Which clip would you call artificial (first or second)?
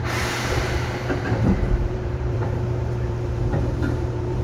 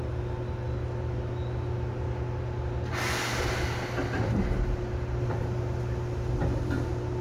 first